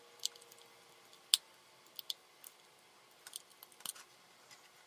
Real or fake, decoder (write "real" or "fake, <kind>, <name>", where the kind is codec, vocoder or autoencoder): real